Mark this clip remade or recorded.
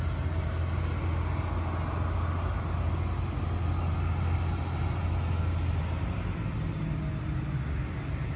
recorded